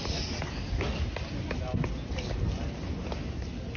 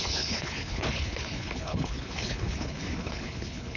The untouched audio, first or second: first